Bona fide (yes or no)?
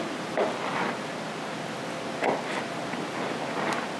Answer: yes